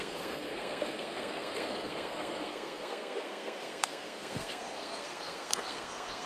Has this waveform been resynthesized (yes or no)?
yes